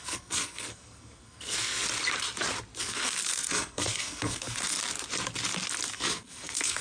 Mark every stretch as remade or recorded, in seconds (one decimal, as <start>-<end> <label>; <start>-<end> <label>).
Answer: 0.0-1.8 remade; 1.8-2.8 recorded; 2.8-4.8 remade; 4.8-5.9 recorded; 5.9-6.8 remade